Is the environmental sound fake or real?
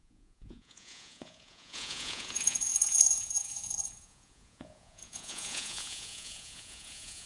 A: fake